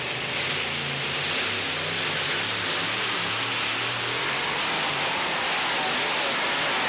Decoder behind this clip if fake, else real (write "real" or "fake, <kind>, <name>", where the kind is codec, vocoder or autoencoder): real